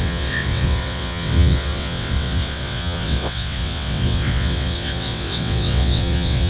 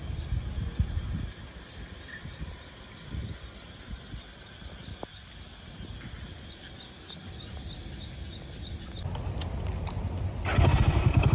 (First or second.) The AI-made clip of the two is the first